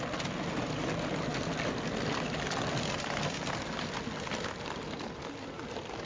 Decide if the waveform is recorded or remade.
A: recorded